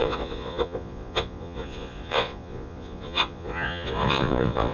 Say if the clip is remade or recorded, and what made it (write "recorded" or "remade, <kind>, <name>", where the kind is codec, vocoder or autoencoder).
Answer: remade, vocoder, Vocos